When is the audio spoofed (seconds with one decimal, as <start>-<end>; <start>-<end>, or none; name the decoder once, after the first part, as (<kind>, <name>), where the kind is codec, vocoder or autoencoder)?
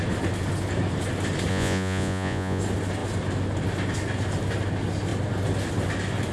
1.5-2.6 (vocoder, Vocos)